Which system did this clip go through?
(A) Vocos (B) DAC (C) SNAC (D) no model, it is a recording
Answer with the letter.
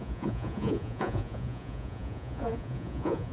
A